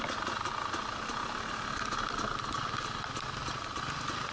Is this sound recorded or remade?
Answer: recorded